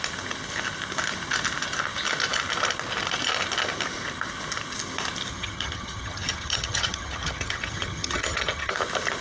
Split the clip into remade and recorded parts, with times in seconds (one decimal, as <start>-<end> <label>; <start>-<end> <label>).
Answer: 0.0-5.3 recorded; 5.3-8.7 remade; 8.7-9.2 recorded